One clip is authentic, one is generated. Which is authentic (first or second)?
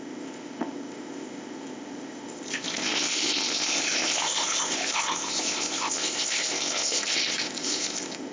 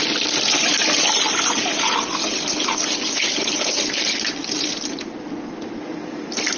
second